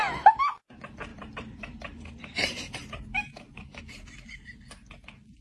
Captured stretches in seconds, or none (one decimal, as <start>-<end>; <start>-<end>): 0.0-1.1; 3.8-5.4